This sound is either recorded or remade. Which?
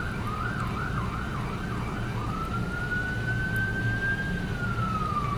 recorded